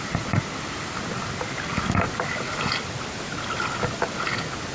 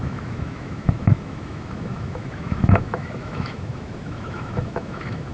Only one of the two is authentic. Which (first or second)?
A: first